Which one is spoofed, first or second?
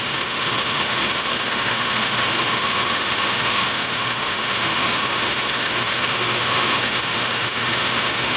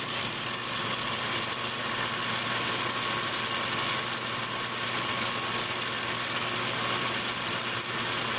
first